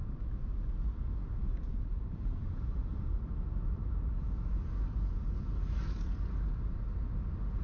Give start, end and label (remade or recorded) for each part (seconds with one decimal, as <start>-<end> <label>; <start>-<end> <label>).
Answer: 0.0-1.4 recorded; 1.4-6.0 remade; 6.0-7.6 recorded